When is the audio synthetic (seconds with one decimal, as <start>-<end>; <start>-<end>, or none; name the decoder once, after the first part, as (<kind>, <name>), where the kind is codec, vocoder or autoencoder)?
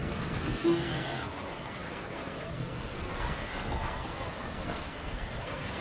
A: 0.0-5.8 (codec, SNAC)